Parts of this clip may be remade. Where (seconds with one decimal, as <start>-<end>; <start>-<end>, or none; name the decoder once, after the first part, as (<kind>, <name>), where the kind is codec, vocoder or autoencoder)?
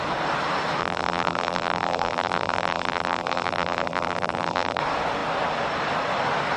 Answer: 0.8-4.8 (vocoder, BigVGAN v2)